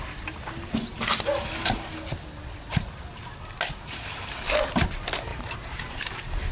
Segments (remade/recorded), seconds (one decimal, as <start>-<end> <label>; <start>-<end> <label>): 0.0-5.3 recorded; 5.3-6.0 remade; 6.0-6.5 recorded